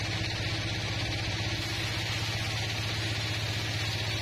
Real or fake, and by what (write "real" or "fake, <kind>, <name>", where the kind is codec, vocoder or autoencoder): real